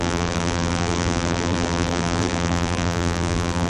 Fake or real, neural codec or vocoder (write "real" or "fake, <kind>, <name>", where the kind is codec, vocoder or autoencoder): fake, vocoder, BigVGAN v2